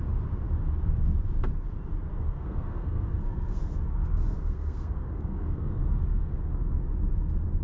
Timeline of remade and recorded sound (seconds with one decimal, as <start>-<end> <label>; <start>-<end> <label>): 0.0-2.2 recorded; 2.2-6.8 remade; 6.8-7.6 recorded